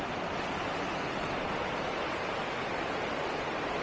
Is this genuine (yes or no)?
yes